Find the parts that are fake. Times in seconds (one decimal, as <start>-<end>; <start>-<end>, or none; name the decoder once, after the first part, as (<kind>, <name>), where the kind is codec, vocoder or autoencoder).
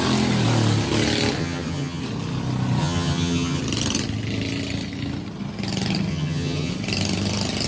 1.4-2.0 (vocoder, HiFi-GAN); 2.8-3.6; 6.1-6.7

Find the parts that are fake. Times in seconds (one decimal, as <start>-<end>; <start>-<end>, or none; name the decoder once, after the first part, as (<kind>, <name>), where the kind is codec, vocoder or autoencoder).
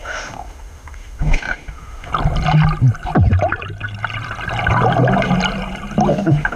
0.0-2.1 (autoencoder, DAC-VAE); 6.1-6.6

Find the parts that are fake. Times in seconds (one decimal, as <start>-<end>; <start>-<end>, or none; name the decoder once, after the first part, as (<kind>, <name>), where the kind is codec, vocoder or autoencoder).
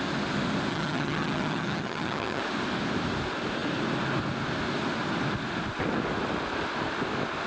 0.7-2.4 (vocoder, HiFi-GAN)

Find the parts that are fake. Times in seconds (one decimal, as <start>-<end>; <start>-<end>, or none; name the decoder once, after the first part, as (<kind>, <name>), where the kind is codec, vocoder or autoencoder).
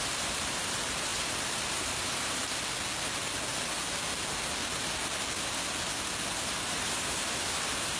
0.0-2.4 (vocoder, BigVGAN v2); 6.7-8.0